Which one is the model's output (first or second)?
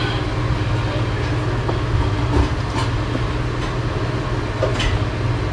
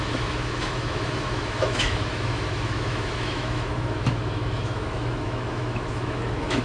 second